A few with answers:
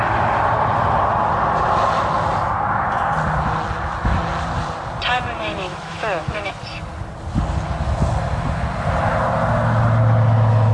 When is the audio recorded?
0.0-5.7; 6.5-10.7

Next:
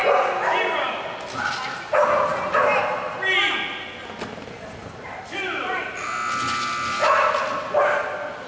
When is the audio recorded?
0.0-4.8; 5.8-8.5

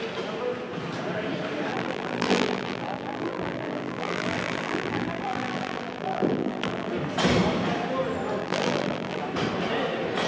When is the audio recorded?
0.0-1.7; 6.9-8.4; 9.2-10.3

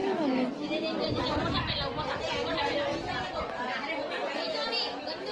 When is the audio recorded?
0.0-5.3

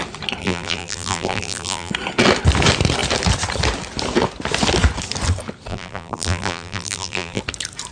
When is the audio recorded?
0.0-0.4; 1.9-5.7; 7.4-7.9

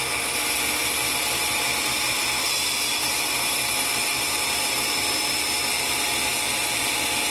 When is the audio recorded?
0.0-7.3

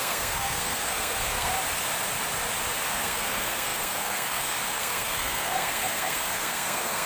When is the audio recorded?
1.5-2.9

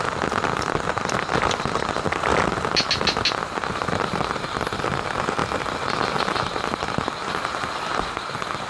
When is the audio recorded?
0.0-8.7